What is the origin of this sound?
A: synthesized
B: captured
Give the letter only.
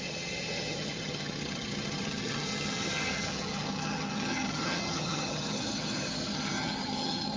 A